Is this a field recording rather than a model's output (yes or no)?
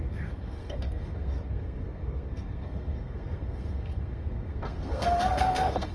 no